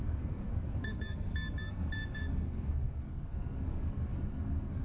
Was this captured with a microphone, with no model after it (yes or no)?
no